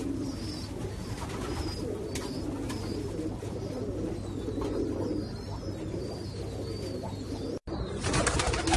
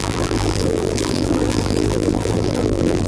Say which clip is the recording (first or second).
first